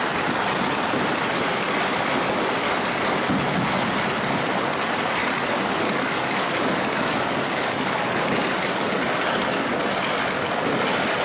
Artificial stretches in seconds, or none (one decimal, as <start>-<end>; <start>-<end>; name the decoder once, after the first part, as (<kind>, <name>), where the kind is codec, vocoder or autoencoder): 5.2-9.8 (codec, DAC)